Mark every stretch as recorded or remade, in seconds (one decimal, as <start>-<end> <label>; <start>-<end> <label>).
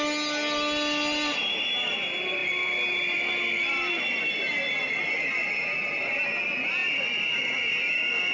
0.0-8.3 recorded